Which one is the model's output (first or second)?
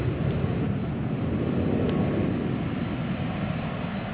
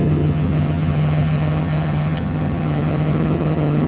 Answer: second